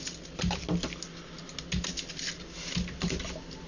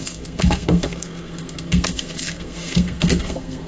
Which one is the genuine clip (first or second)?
first